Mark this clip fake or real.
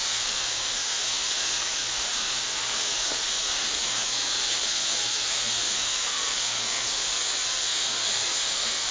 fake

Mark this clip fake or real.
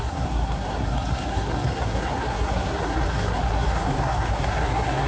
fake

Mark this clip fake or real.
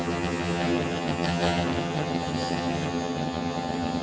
fake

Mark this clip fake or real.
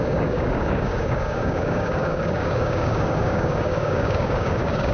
fake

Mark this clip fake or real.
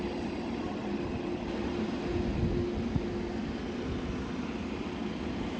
real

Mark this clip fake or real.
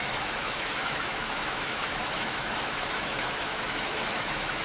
fake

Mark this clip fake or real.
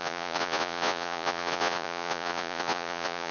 fake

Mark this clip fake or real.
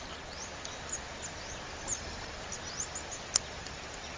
real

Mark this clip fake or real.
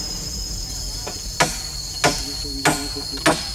real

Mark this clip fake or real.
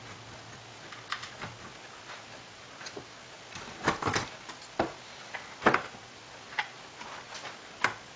real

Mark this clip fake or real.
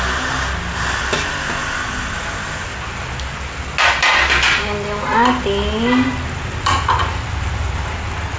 real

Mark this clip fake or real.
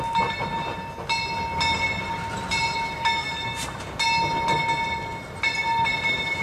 real